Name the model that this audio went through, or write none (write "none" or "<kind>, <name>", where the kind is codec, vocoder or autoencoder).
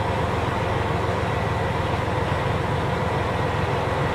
none